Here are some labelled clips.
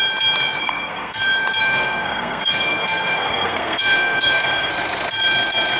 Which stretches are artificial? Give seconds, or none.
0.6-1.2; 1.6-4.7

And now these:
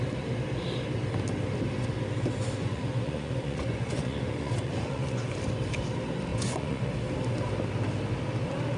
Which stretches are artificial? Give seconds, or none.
2.6-5.2; 6.3-6.9

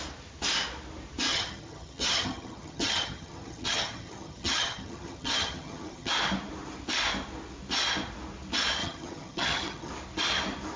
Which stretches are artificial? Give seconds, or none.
1.3-6.1; 8.8-9.9